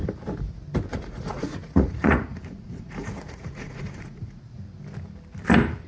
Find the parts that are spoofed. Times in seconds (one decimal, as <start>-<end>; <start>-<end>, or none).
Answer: 0.9-4.4